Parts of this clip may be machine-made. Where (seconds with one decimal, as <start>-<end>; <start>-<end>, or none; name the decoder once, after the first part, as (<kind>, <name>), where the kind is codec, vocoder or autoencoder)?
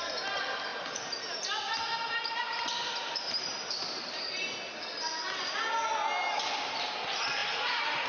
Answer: 0.7-4.7 (vocoder, BigVGAN v2); 7.4-8.1